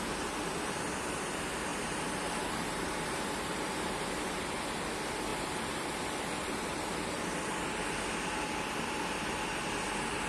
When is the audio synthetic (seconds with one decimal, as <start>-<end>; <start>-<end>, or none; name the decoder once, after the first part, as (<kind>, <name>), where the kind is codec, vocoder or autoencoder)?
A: 1.7-3.6 (vocoder, BigVGAN v2); 5.3-7.1